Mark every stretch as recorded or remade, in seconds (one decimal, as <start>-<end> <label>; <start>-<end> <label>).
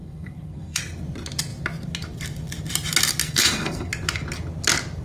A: 0.0-0.8 remade; 0.8-3.2 recorded; 3.2-3.9 remade; 3.9-5.0 recorded